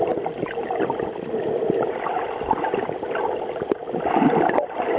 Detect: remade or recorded recorded